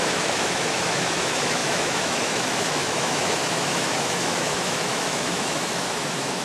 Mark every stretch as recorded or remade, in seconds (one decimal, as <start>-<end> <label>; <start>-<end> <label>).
0.0-6.4 remade